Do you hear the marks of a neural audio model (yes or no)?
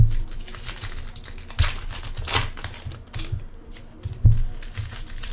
no